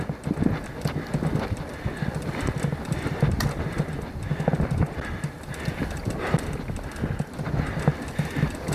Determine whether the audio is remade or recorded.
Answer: recorded